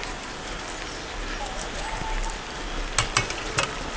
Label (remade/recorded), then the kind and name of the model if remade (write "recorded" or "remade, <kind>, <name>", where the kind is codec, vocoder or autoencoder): recorded